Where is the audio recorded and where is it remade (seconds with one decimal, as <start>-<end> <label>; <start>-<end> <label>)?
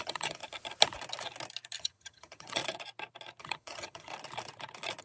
0.0-0.4 remade; 0.4-1.8 recorded; 1.8-2.6 remade; 2.6-3.4 recorded; 3.4-4.1 remade; 4.1-5.0 recorded